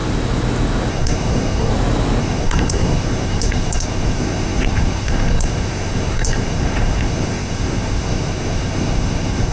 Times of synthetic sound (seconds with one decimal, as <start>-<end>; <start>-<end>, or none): 0.9-1.7; 2.2-9.5